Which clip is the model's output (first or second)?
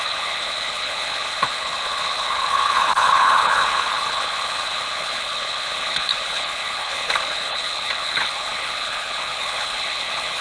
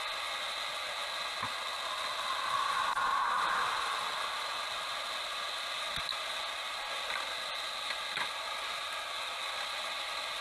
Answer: first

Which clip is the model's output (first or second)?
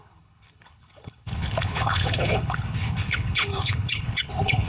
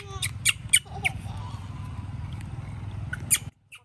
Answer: first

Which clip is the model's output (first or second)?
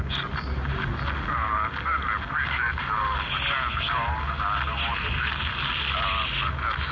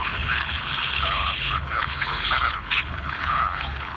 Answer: second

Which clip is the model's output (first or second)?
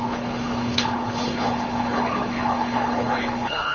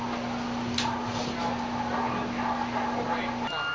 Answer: first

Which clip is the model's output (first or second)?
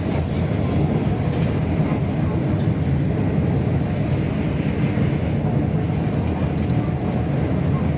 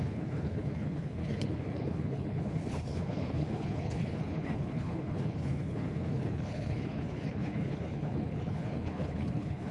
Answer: second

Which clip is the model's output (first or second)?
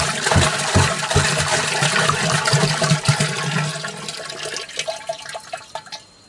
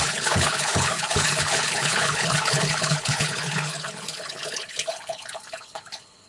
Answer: second